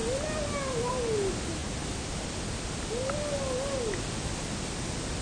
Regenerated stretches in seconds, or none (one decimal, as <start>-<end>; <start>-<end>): none